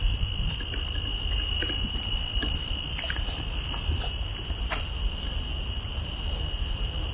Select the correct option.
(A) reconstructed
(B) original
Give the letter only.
B